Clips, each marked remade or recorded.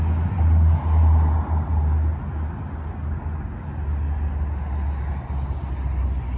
recorded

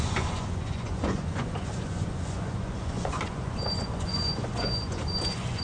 remade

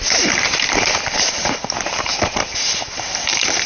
remade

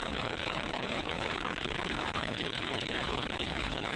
remade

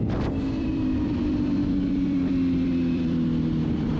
remade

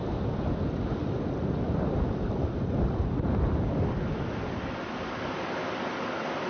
recorded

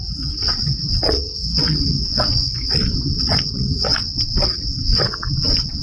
remade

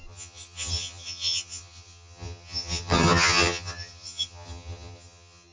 remade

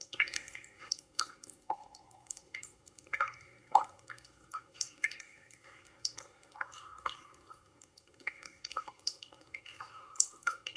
remade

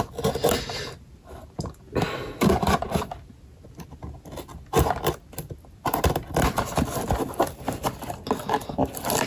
recorded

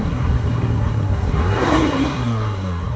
remade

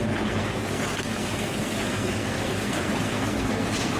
remade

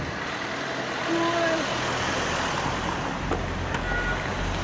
remade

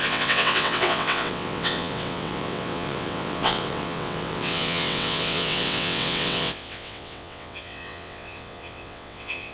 remade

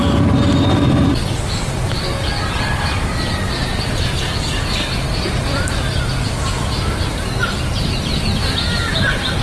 recorded